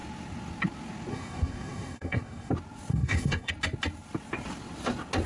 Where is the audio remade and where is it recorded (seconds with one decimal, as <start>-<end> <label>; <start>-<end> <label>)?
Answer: 0.0-1.1 recorded; 1.1-2.5 remade; 2.5-2.9 recorded; 2.9-3.5 remade; 3.5-5.3 recorded